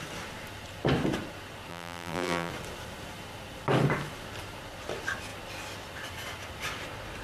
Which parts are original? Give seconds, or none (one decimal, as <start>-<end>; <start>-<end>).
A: 0.0-1.7; 2.5-7.2